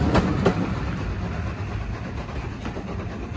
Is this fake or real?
real